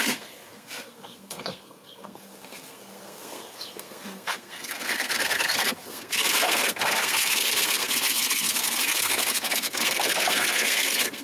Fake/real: fake